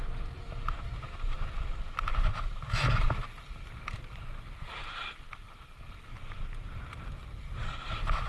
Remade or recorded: remade